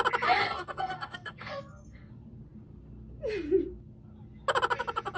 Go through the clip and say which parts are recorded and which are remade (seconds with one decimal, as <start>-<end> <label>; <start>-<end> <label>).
0.0-0.4 recorded; 0.4-2.1 remade; 2.1-5.2 recorded